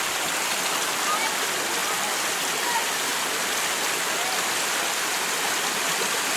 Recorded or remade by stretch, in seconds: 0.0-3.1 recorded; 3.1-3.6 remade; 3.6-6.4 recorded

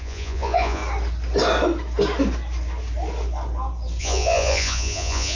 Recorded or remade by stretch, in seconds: 0.0-0.8 remade; 0.8-4.0 recorded; 4.0-5.3 remade

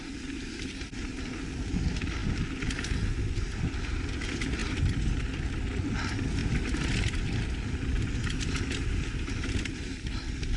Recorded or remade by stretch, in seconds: 0.0-10.6 recorded

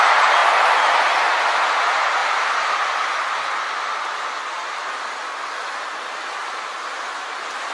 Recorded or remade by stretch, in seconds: 0.0-7.7 recorded

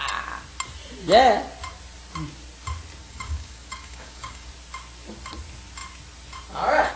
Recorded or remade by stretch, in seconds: 0.0-3.0 recorded; 3.0-4.5 remade; 4.5-7.0 recorded

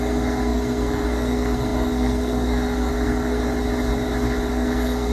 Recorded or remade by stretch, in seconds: 0.0-3.4 remade; 3.4-4.5 recorded; 4.5-5.1 remade

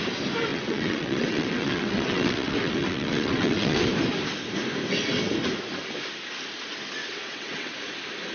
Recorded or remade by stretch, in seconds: 0.0-0.5 recorded; 0.5-3.9 remade; 3.9-7.0 recorded; 7.0-7.7 remade; 7.7-8.3 recorded